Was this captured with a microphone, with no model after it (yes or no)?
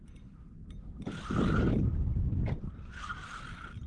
yes